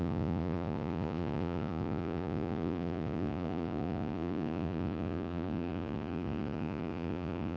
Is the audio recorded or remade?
remade